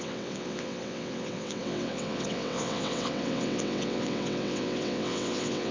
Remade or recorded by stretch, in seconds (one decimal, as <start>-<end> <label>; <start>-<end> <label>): 0.0-5.7 remade

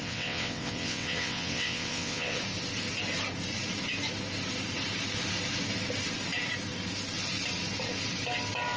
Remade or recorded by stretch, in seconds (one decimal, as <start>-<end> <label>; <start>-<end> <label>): 0.0-2.4 remade; 2.4-8.8 recorded

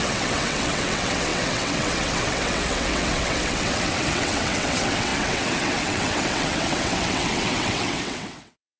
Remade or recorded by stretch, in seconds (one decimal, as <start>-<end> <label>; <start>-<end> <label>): 0.0-8.8 remade

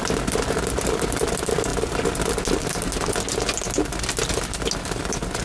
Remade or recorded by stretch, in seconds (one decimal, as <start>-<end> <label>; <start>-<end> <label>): 0.0-5.4 recorded

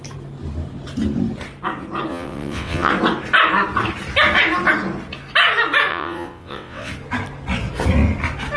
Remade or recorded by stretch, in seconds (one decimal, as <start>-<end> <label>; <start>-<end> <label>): 0.0-2.1 recorded; 2.1-2.9 remade; 2.9-5.9 recorded; 5.9-6.9 remade; 6.9-8.6 recorded

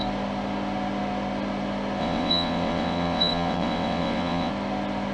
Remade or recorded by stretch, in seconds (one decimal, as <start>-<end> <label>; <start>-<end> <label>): 0.0-2.0 recorded; 2.0-4.5 remade; 4.5-5.1 recorded

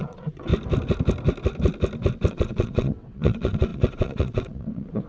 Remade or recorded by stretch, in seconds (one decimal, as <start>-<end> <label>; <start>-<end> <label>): 0.0-0.5 remade; 0.5-2.3 recorded; 2.3-5.1 remade